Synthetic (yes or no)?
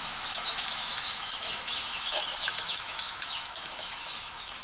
yes